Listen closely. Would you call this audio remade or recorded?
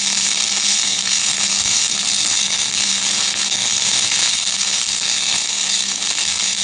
remade